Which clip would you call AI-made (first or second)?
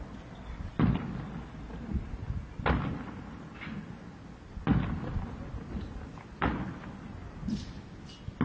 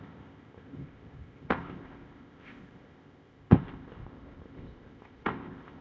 second